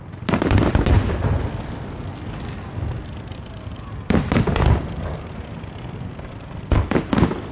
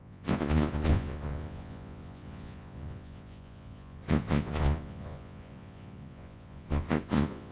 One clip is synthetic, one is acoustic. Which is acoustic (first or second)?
first